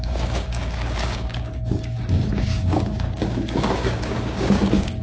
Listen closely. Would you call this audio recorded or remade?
remade